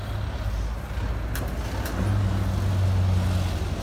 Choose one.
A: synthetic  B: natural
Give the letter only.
B